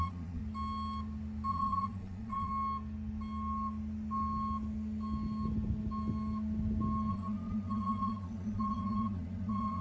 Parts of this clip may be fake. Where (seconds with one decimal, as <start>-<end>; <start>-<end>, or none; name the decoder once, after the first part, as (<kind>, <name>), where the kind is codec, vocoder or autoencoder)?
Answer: 0.0-0.4 (vocoder, Vocos); 1.5-2.5; 7.1-9.8